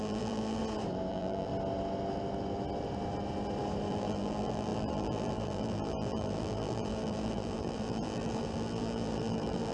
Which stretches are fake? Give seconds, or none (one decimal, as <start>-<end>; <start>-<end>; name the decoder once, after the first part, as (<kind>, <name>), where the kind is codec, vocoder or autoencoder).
0.0-0.6 (vocoder, BigVGAN v2); 1.1-1.5; 3.9-9.7

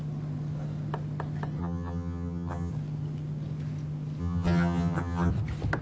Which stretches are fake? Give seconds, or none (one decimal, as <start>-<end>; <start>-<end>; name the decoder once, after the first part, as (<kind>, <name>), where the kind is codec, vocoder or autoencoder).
1.6-2.7 (vocoder, HiFi-GAN); 4.2-5.3